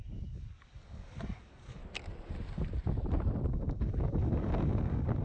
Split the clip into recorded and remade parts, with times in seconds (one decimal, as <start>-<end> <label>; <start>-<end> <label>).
0.0-1.8 remade; 1.8-3.5 recorded; 3.5-5.2 remade